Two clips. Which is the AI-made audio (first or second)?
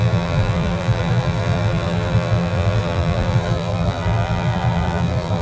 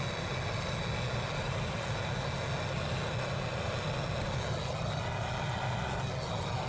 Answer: first